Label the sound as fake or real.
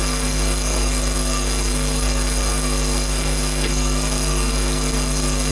fake